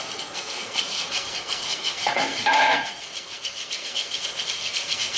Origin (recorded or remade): remade